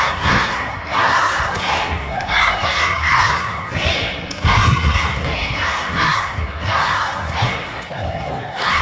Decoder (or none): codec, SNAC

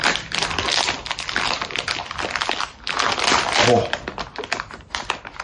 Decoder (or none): none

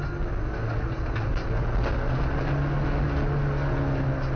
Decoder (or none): none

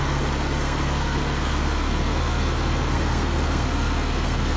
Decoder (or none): codec, SNAC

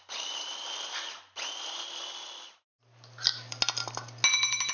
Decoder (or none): none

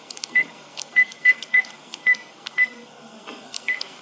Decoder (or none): codec, SNAC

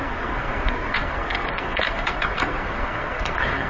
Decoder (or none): codec, SNAC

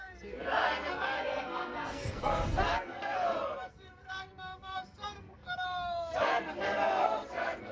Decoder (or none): codec, SNAC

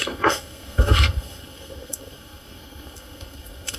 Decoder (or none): codec, SNAC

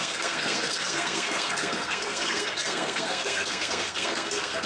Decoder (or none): codec, SNAC